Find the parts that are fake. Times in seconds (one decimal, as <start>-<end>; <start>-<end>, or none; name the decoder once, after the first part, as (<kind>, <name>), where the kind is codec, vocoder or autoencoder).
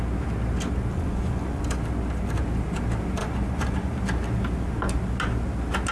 0.9-1.6 (vocoder, Vocos); 3.2-4.0